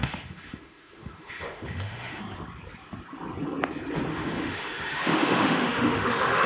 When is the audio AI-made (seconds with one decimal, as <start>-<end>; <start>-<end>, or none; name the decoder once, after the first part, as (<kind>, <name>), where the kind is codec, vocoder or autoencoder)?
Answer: 0.0-2.2 (autoencoder, DAC-VAE); 4.1-6.5